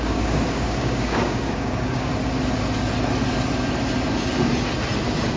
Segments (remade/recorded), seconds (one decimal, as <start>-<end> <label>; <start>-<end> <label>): 0.0-2.1 remade; 2.1-5.4 recorded